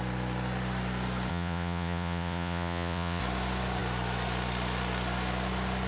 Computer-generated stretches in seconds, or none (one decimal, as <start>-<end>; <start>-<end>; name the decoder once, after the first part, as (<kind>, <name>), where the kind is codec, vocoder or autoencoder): 1.3-3.2 (vocoder, Vocos)